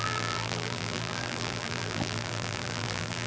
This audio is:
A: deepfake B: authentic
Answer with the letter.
A